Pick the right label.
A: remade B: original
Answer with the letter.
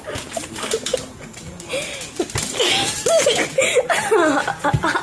B